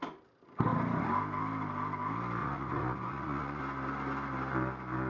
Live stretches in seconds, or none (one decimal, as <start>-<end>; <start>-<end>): 0.0-2.4; 3.6-5.1